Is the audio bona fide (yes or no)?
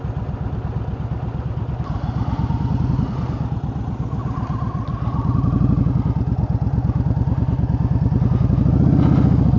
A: yes